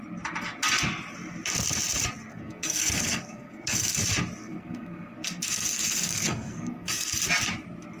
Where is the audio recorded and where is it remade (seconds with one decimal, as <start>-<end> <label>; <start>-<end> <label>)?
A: 0.0-2.3 recorded; 2.3-4.0 remade; 4.0-4.4 recorded; 4.4-7.1 remade; 7.1-8.0 recorded